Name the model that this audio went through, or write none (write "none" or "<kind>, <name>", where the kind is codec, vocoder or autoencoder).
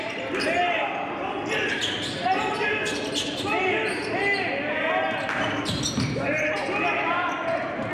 none